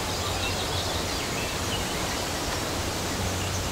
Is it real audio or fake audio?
real